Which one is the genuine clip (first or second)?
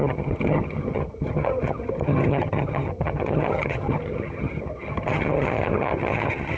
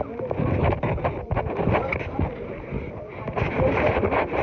second